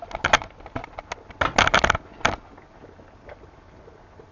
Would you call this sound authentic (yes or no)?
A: yes